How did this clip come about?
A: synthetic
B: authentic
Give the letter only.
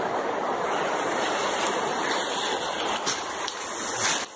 B